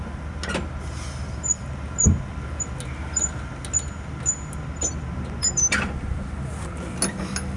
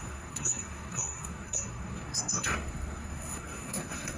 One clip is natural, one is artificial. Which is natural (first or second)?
first